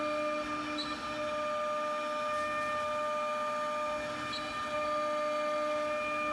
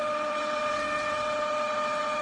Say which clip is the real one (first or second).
first